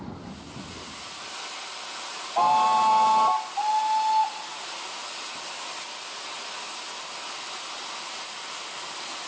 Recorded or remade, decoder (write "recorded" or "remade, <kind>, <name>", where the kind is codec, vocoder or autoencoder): recorded